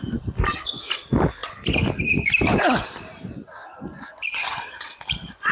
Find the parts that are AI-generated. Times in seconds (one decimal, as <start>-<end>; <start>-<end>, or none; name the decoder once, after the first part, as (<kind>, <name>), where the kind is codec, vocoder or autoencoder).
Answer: none